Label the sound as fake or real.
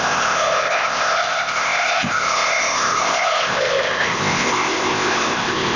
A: fake